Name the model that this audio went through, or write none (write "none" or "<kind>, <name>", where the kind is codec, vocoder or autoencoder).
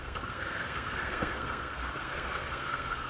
codec, SNAC